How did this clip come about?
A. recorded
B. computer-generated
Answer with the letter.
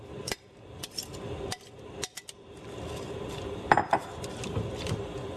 A